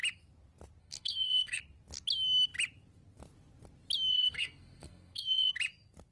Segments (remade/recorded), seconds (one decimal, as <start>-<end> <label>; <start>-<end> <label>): 0.0-0.8 recorded; 0.8-1.6 remade; 1.6-4.1 recorded; 4.1-5.5 remade; 5.5-6.1 recorded

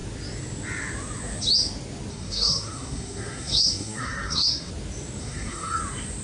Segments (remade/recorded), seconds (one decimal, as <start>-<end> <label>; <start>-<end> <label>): 0.0-2.1 recorded; 2.1-4.7 remade; 4.7-5.2 recorded; 5.2-5.8 remade; 5.8-6.2 recorded

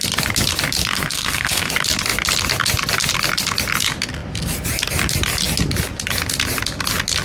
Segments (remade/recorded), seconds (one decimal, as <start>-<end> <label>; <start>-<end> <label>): 0.0-0.9 recorded; 0.9-1.7 remade; 1.7-7.2 recorded

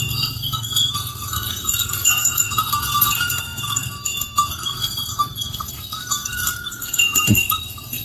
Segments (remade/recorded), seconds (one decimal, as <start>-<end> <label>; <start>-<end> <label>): 0.0-8.0 remade

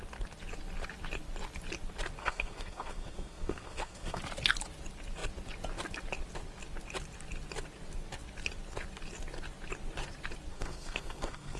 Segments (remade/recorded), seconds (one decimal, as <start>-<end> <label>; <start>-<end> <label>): 0.0-2.2 recorded; 2.2-4.2 remade; 4.2-10.5 recorded; 10.5-11.6 remade

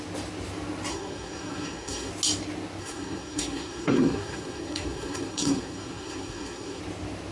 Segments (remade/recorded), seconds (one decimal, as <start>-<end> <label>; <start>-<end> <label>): 0.0-0.9 recorded; 0.9-2.1 remade; 2.1-2.8 recorded; 2.8-6.8 remade; 6.8-7.3 recorded

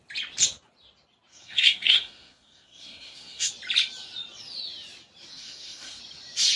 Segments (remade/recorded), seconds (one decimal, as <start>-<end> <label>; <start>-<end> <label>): 0.0-1.3 recorded; 1.3-3.5 remade; 3.5-5.3 recorded; 5.3-6.0 remade; 6.0-6.6 recorded